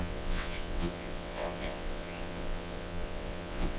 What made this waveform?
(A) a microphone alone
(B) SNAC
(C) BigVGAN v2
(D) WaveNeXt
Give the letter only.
D